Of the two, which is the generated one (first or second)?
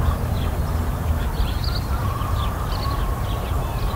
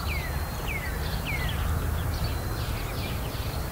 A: second